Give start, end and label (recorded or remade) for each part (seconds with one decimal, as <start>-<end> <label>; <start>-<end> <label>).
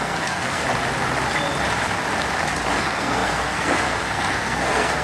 0.0-0.6 remade; 0.6-2.8 recorded; 2.8-5.0 remade